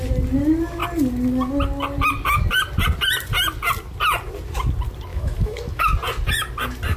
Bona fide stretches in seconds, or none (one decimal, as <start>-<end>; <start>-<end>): 0.0-5.1; 5.9-7.0

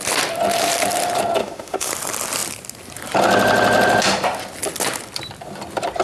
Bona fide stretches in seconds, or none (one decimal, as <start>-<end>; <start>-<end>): 0.0-1.4; 1.9-6.0

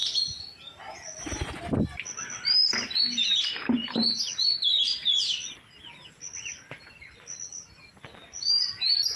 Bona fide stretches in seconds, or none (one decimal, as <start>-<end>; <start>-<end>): 0.0-9.2

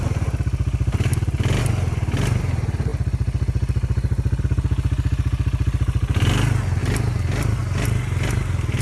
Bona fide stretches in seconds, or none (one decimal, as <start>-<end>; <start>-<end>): 0.0-6.8; 7.6-8.8

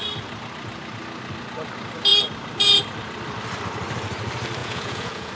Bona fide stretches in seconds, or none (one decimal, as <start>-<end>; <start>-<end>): 0.0-4.6

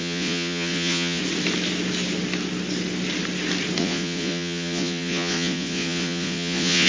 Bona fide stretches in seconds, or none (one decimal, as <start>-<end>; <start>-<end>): 1.2-3.8

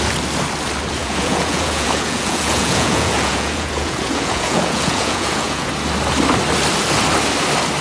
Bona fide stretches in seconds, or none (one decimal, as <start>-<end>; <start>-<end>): 0.0-1.0; 5.7-7.8